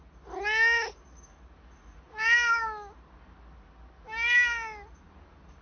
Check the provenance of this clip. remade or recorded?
recorded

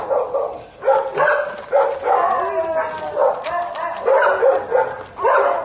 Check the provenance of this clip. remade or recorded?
recorded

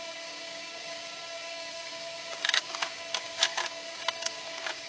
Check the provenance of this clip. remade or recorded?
remade